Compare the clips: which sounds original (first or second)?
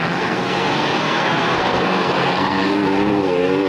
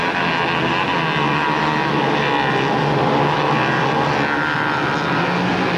second